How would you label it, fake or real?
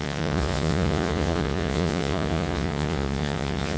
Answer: fake